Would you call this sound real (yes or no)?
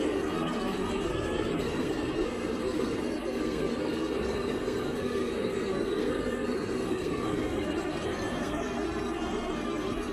no